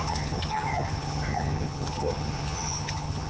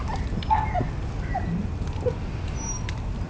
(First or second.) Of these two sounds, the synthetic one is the first